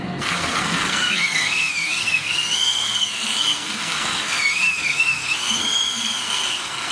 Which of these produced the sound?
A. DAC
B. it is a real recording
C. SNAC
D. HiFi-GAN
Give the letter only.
C